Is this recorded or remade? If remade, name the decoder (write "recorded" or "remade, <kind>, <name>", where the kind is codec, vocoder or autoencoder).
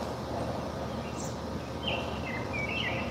recorded